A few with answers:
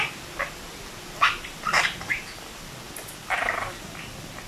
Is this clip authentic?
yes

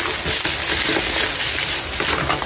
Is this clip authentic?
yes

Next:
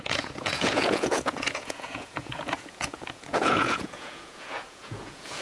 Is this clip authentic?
no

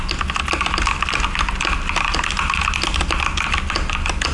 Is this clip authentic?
yes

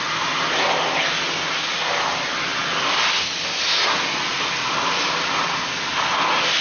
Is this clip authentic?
yes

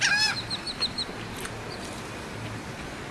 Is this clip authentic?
yes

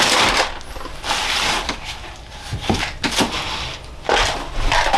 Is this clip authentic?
yes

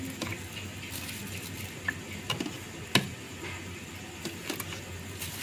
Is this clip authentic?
yes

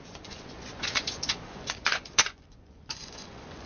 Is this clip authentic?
no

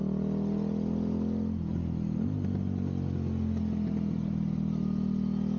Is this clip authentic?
yes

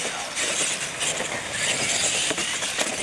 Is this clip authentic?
yes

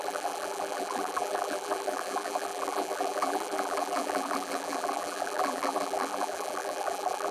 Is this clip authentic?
no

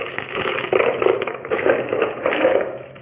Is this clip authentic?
no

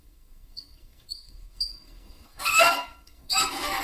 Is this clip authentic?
no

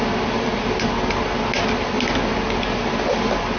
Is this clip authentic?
yes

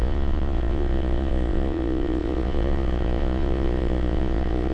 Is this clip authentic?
no